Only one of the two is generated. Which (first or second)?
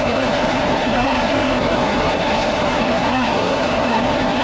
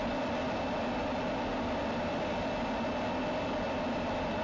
first